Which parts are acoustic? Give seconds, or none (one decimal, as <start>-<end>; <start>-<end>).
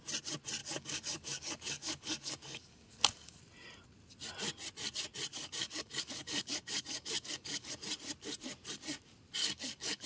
0.0-0.6; 3.4-5.3; 7.7-9.4